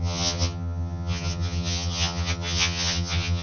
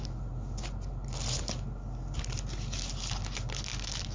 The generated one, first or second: first